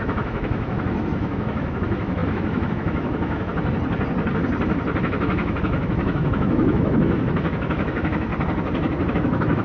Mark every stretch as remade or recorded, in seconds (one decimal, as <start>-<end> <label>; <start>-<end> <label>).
0.0-3.5 remade; 3.5-5.0 recorded; 5.0-8.3 remade; 8.3-9.1 recorded; 9.1-9.6 remade